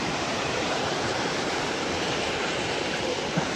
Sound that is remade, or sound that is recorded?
remade